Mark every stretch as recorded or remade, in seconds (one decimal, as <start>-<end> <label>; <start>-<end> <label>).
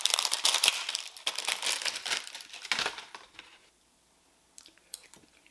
0.0-0.7 remade; 0.7-3.6 recorded; 3.6-5.5 remade